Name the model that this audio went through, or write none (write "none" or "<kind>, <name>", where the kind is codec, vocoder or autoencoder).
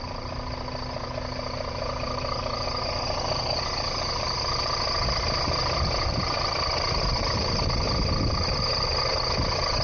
none